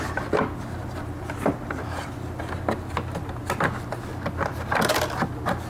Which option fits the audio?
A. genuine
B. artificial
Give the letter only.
A